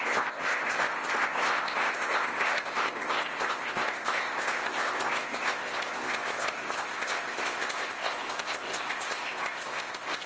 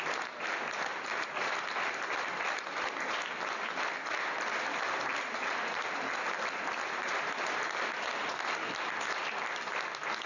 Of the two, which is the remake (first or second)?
first